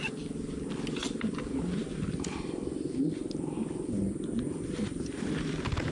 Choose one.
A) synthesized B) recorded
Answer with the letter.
B